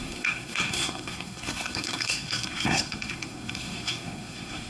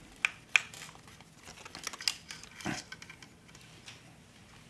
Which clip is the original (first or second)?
second